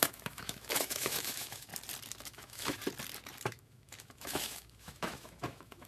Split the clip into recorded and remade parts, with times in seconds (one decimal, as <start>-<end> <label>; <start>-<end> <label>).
0.0-1.7 remade; 1.7-2.2 recorded; 2.2-2.8 remade; 2.8-3.5 recorded; 3.5-5.9 remade